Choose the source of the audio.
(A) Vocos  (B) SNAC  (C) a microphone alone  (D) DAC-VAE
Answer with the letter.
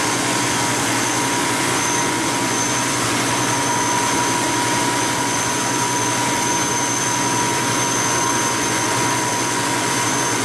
A